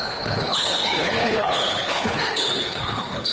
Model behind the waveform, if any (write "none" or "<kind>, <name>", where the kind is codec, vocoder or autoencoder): codec, HILCodec